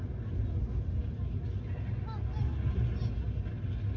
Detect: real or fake real